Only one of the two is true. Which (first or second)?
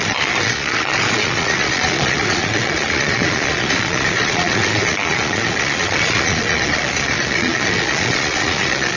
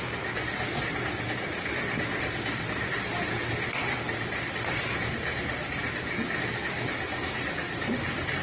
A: second